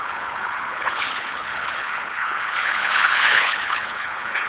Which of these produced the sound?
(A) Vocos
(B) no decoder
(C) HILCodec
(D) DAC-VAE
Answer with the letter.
C